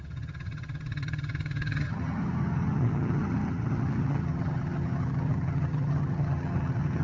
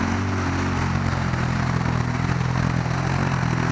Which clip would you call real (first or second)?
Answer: second